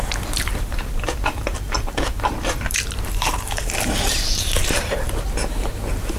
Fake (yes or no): yes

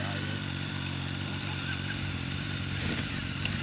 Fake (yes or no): yes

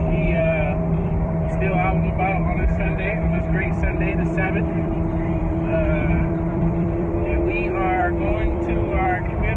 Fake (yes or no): yes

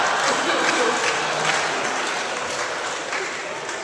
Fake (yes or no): no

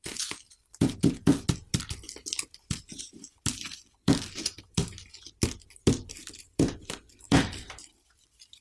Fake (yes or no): yes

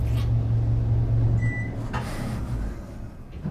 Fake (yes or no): no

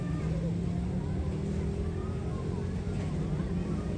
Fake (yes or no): no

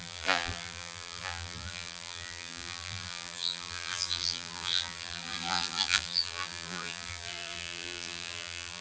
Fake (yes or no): yes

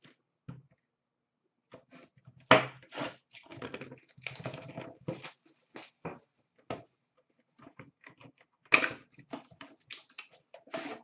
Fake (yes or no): no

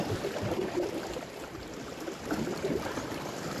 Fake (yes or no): no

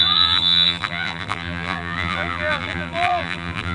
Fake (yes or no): yes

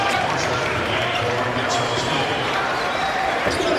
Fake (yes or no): yes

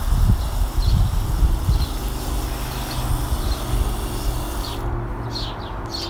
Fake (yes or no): no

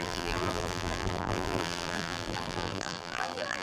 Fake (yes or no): yes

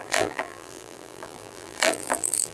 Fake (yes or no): yes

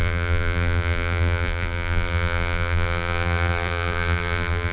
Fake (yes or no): yes